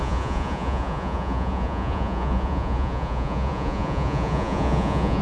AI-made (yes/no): yes